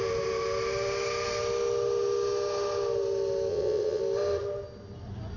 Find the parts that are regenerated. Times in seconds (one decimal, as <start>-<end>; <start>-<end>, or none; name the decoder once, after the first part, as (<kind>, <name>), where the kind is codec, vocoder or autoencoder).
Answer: 3.5-4.0 (vocoder, WaveNeXt)